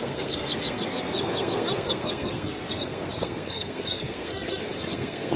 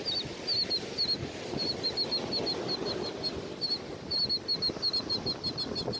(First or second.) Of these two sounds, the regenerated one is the first